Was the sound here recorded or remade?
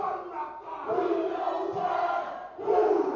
recorded